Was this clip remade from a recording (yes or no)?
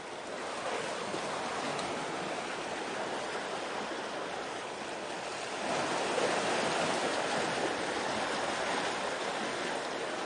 no